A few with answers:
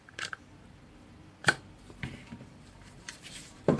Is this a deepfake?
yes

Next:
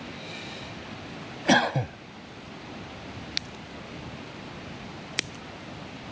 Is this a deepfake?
no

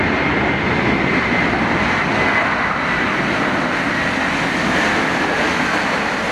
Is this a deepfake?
no